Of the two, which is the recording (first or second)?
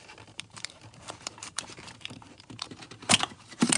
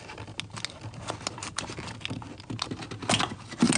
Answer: second